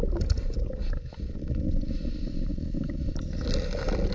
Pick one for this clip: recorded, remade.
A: recorded